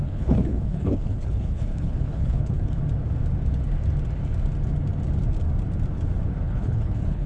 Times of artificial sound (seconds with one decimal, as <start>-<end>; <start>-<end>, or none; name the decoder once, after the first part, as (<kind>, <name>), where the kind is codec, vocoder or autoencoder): 0.0-2.8 (codec, HILCodec); 6.4-7.3